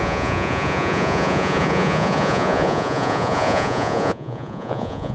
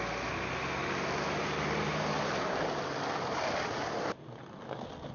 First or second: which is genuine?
second